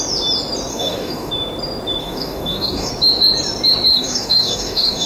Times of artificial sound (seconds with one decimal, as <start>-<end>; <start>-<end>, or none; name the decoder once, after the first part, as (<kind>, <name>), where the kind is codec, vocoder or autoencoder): 0.7-1.3 (codec, DAC); 2.0-2.9; 3.9-5.1